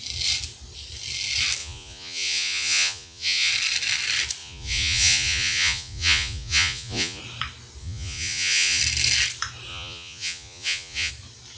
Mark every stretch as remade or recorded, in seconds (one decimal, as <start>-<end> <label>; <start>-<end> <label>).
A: 0.0-1.6 recorded; 1.6-3.5 remade; 3.5-4.4 recorded; 4.4-7.2 remade; 7.2-7.8 recorded; 7.8-8.8 remade; 8.8-9.7 recorded; 9.7-11.1 remade; 11.1-11.6 recorded